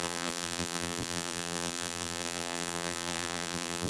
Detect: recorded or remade remade